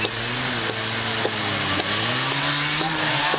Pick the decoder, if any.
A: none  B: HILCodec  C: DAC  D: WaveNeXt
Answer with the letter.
A